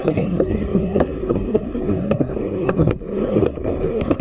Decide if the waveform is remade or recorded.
remade